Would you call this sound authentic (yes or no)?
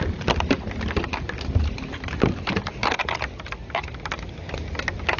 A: yes